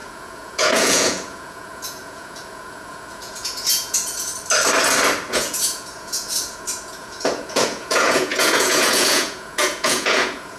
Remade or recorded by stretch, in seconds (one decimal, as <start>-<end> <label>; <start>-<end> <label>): 0.0-4.3 remade; 4.3-5.3 recorded; 5.3-10.6 remade